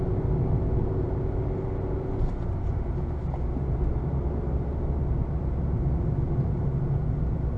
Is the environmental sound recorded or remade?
recorded